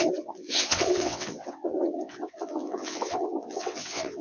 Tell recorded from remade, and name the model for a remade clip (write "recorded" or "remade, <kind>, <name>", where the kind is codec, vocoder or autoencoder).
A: remade, vocoder, WaveNeXt